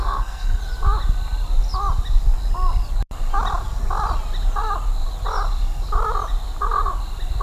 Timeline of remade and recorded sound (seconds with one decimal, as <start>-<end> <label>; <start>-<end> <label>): 0.0-0.6 remade; 0.6-7.4 recorded